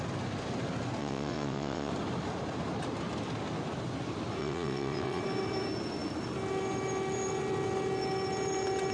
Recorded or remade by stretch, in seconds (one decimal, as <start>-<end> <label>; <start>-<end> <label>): 0.0-1.0 recorded; 1.0-1.9 remade; 1.9-4.4 recorded; 4.4-5.2 remade; 5.2-8.9 recorded